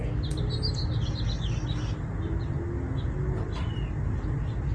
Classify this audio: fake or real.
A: real